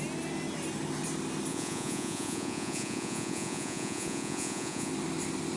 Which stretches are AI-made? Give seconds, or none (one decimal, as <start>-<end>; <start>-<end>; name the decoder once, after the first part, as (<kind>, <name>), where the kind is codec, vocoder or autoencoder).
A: 1.5-4.9 (vocoder, Vocos)